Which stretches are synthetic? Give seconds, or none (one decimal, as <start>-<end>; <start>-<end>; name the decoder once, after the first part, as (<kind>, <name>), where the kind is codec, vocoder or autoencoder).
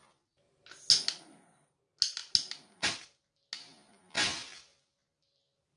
none